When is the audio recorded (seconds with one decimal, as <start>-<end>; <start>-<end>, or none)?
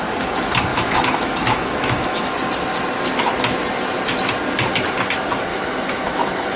0.0-0.7; 2.3-5.5